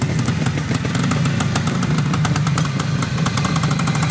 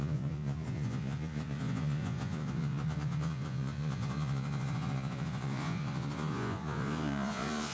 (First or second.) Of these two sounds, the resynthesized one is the second